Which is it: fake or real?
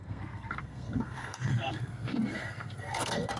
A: fake